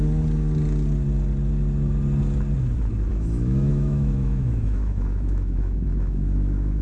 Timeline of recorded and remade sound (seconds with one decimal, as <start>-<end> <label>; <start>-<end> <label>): 0.0-3.1 recorded; 3.1-6.8 remade